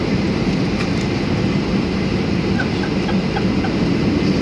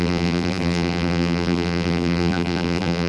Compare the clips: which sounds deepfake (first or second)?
second